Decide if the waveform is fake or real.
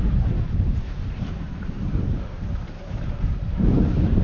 fake